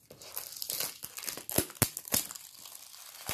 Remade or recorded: recorded